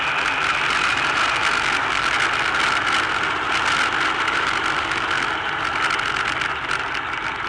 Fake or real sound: real